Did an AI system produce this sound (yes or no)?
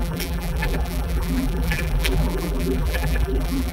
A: yes